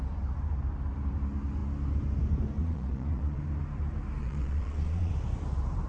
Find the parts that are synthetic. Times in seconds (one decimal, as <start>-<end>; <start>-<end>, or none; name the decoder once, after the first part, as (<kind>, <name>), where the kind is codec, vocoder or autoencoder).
2.6-3.4 (vocoder, Vocos); 4.2-5.1